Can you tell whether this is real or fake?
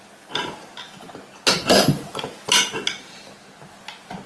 real